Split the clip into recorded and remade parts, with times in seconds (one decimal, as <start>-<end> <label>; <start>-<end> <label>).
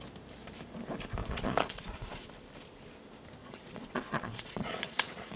0.0-1.2 recorded; 1.2-2.3 remade; 2.3-3.4 recorded; 3.4-5.4 remade